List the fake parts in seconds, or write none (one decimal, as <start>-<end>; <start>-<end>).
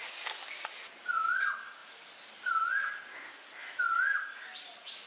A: 0.0-0.8